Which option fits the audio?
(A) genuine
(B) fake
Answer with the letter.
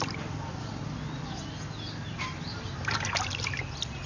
A